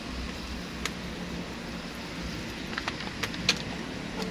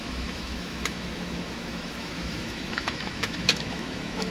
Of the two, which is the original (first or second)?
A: first